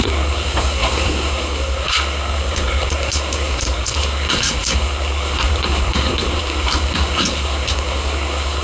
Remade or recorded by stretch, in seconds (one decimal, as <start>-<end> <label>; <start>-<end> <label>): 0.0-8.6 remade